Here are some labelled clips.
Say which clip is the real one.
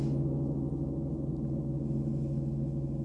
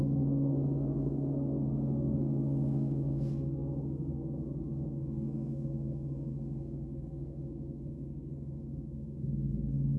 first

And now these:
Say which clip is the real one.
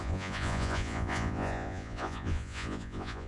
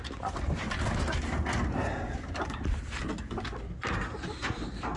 second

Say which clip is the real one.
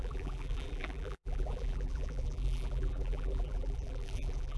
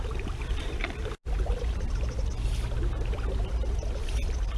second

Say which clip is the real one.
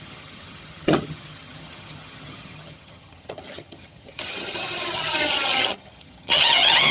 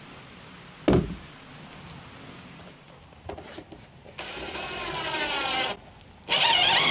second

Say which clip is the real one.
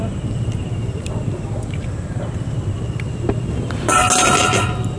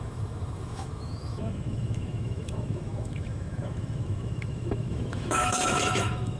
first